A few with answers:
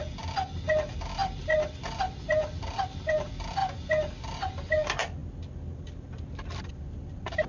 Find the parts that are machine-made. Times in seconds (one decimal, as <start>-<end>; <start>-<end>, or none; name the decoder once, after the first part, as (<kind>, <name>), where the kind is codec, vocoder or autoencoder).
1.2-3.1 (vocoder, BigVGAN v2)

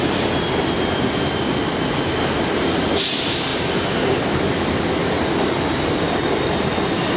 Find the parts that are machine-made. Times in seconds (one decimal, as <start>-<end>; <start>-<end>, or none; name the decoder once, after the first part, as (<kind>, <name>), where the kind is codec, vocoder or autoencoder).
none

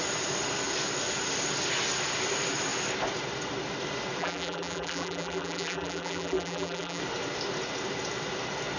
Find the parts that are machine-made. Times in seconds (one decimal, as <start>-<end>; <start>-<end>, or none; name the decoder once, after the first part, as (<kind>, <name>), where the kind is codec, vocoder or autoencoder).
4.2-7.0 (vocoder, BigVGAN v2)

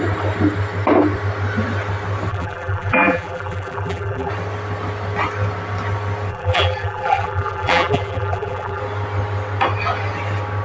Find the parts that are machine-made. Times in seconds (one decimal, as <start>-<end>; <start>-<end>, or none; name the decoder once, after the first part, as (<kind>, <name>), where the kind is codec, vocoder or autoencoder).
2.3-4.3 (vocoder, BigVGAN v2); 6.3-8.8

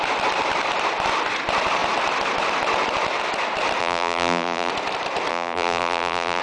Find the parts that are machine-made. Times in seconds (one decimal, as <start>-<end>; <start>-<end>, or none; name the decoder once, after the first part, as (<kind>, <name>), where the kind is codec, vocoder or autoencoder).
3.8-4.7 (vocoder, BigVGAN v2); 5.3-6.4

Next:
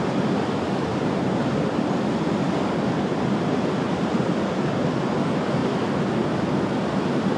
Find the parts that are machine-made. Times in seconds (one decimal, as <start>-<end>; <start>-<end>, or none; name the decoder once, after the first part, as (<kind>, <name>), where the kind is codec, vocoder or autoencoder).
0.9-5.1 (vocoder, BigVGAN v2)

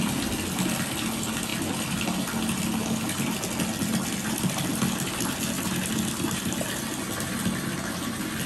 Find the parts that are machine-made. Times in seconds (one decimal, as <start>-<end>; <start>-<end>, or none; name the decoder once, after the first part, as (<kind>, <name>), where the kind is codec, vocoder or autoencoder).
none

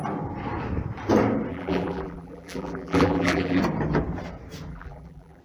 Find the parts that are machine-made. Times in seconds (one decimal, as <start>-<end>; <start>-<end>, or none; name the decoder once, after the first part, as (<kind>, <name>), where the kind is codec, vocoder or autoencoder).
1.5-3.6 (vocoder, BigVGAN v2); 4.7-5.4